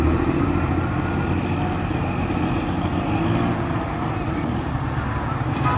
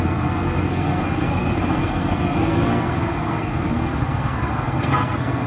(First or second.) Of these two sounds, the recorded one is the first